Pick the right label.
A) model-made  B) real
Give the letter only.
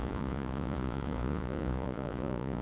A